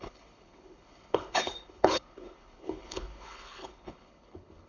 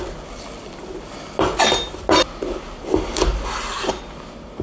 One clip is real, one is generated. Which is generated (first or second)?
first